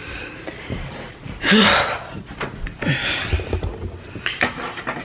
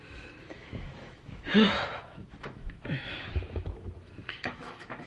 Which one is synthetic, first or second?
second